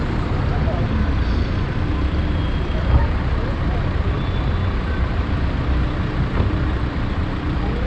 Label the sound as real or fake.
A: fake